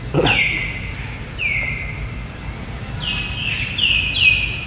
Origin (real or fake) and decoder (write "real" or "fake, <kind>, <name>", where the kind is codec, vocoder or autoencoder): real